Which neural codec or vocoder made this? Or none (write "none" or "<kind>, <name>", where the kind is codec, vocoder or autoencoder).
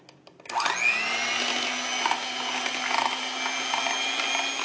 none